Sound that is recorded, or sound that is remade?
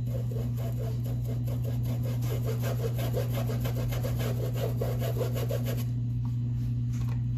recorded